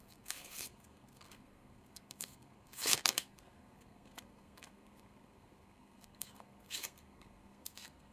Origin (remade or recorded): remade